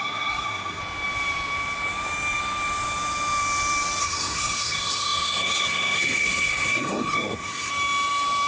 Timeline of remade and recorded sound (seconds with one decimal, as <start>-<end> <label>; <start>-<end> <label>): 0.0-0.8 remade; 0.8-4.0 recorded; 4.0-7.7 remade; 7.7-8.5 recorded